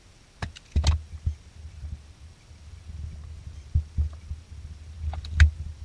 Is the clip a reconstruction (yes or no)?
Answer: no